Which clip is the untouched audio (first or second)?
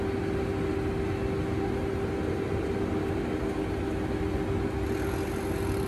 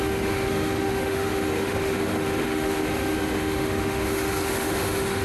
first